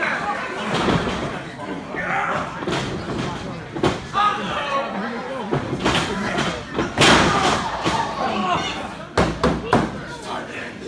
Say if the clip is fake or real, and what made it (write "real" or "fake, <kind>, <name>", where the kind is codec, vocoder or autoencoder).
real